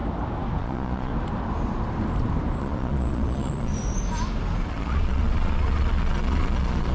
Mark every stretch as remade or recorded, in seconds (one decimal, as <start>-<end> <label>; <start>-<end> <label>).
0.0-0.6 recorded; 0.6-1.1 remade; 1.1-2.6 recorded; 2.6-3.7 remade; 3.7-4.7 recorded; 4.7-6.9 remade